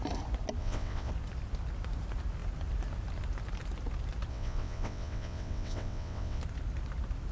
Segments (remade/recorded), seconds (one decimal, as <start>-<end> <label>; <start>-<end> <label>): 0.0-0.6 recorded; 0.6-1.1 remade; 1.1-4.3 recorded; 4.3-6.4 remade; 6.4-7.3 recorded